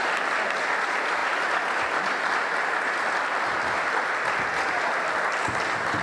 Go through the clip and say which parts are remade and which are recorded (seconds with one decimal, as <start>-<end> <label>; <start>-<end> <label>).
0.0-6.0 recorded